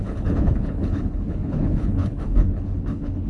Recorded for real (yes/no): no